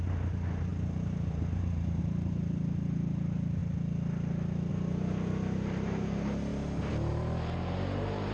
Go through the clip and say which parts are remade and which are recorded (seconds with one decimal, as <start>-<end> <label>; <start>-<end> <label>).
0.0-3.6 remade; 3.6-4.7 recorded; 4.7-6.5 remade; 6.5-7.1 recorded; 7.1-8.3 remade